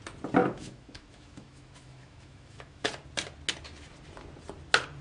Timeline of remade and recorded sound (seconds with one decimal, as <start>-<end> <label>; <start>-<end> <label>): 0.0-0.4 recorded; 0.4-2.9 remade; 2.9-5.0 recorded